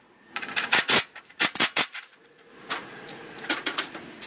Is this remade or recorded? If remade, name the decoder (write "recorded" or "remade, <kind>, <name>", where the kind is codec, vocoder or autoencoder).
remade, vocoder, Vocos